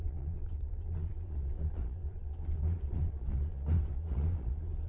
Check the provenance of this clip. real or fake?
fake